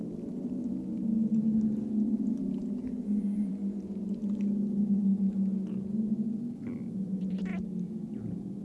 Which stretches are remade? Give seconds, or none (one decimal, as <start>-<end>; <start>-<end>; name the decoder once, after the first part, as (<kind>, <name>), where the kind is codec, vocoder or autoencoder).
2.8-3.5 (vocoder, Vocos)